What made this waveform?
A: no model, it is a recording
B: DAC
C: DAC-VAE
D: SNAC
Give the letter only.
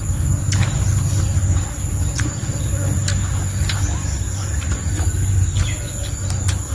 A